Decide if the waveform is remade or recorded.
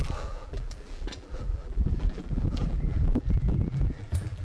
remade